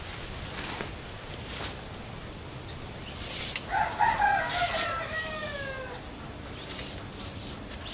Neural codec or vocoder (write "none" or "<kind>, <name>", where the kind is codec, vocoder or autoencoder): none